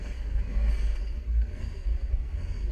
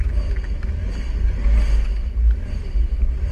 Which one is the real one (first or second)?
second